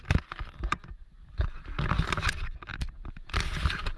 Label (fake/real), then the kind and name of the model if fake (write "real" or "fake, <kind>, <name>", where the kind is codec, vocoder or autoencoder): real